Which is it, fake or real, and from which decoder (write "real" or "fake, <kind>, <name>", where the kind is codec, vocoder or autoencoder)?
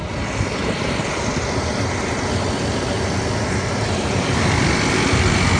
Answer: real